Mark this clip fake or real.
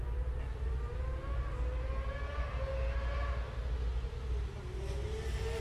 real